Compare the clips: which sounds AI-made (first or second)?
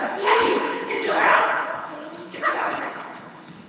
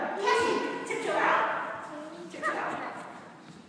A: first